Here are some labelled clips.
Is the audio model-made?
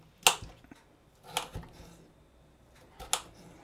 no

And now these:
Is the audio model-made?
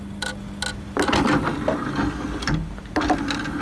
no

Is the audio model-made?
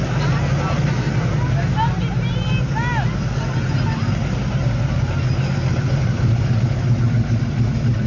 no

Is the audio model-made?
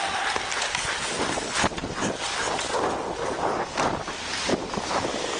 no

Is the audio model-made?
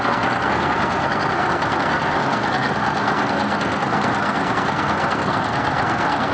yes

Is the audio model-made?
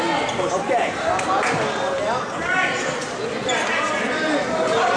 no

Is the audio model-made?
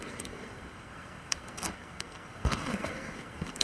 yes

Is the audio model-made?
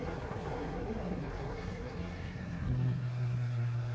yes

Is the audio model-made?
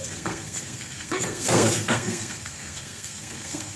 yes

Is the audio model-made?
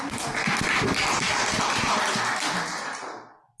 no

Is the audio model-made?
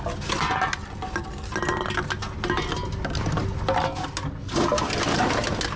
no